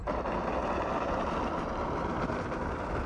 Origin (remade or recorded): recorded